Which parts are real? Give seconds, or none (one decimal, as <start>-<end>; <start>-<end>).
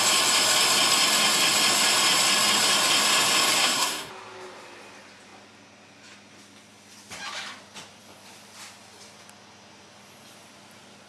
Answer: 0.0-3.6; 4.1-11.1